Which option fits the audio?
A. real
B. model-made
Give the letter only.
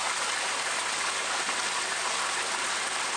A